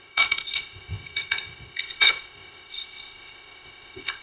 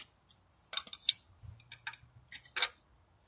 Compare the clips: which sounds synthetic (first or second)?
first